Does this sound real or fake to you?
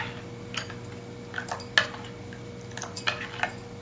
real